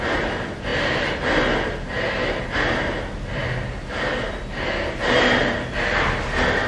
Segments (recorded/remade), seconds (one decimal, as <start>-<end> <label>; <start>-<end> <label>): 0.0-6.7 recorded